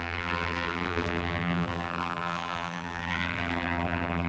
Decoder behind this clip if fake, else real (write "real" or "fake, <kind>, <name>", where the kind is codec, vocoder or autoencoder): fake, vocoder, BigVGAN v2